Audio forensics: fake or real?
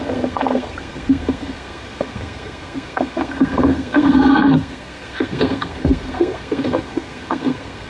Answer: fake